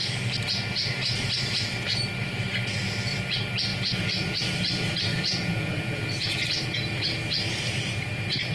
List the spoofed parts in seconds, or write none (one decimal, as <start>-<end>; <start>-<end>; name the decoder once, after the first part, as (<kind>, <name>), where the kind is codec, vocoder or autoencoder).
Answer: 3.7-4.4 (vocoder, Vocos); 5.1-6.4